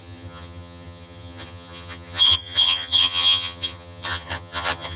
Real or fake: fake